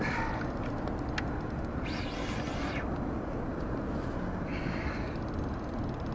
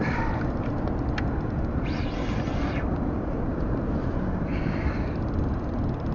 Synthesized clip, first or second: second